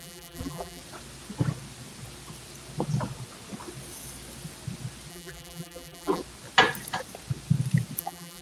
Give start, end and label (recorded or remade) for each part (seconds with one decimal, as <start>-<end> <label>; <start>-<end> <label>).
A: 0.0-0.8 remade; 0.8-5.1 recorded; 5.1-6.2 remade; 6.2-8.0 recorded; 8.0-8.4 remade